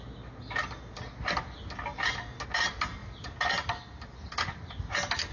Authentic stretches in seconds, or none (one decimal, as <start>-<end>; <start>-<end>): 0.0-5.3